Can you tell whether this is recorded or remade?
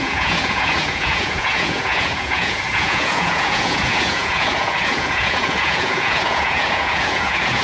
remade